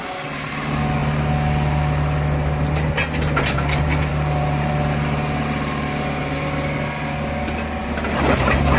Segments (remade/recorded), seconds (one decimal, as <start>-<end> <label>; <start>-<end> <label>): 0.0-4.1 recorded; 4.1-4.7 remade; 4.7-7.8 recorded; 7.8-8.8 remade